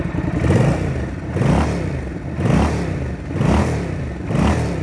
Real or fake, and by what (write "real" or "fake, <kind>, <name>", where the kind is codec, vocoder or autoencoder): real